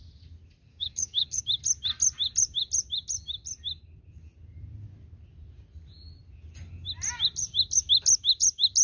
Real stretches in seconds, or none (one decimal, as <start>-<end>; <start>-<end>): 0.0-0.7; 1.4-8.8